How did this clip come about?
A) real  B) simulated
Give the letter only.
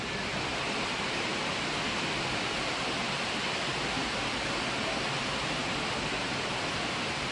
A